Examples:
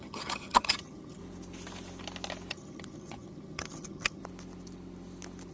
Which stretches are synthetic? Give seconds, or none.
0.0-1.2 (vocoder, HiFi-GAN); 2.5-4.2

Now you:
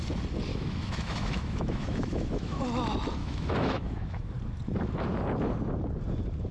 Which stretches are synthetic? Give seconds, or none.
0.5-2.6 (autoencoder, DAC-VAE); 3.2-4.3

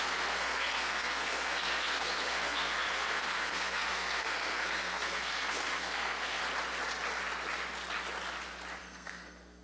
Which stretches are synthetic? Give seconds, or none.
0.0-6.4 (codec, SNAC); 8.8-9.6

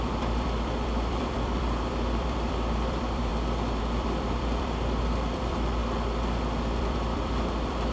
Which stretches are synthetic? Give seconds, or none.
0.0-3.3 (vocoder, BigVGAN v2); 3.8-5.8; 6.8-7.9

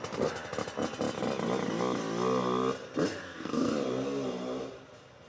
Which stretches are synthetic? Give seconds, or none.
3.2-3.7 (codec, SNAC)

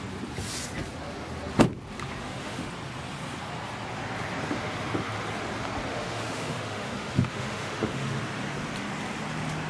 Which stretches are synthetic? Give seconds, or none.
2.2-2.7 (autoencoder, DAC-VAE); 5.9-8.2

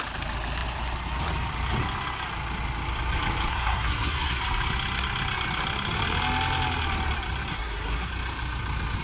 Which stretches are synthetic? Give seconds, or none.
3.5-4.4 (codec, SNAC); 7.5-8.1

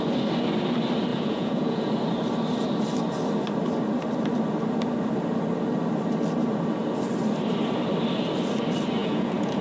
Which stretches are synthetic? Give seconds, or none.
1.1-1.9 (vocoder, Vocos); 9.0-9.6